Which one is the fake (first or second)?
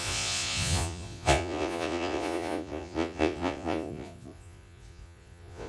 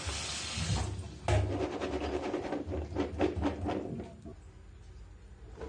first